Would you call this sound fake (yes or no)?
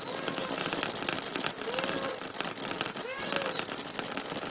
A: no